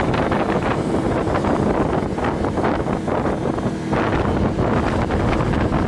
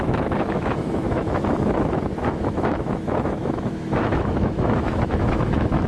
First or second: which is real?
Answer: first